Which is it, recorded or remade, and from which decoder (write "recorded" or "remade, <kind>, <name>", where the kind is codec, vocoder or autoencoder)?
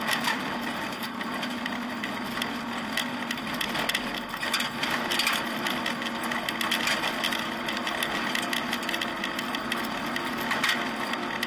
recorded